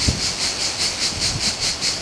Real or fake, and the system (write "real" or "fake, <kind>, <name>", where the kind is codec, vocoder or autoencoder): real